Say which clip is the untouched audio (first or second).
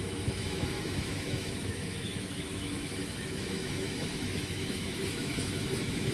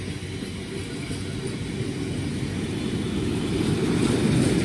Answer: second